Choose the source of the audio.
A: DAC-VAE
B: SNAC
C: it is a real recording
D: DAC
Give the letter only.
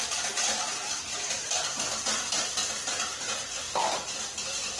C